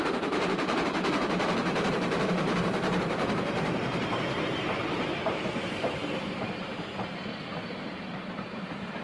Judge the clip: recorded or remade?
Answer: remade